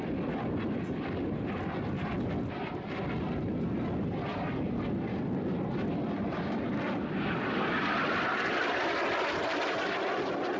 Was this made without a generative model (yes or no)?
yes